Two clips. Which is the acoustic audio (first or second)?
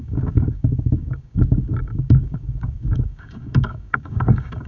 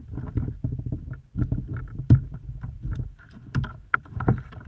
second